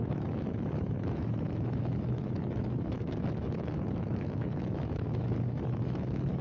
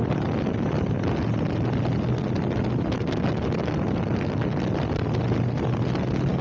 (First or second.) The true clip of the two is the second